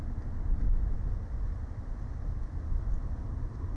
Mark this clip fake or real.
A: real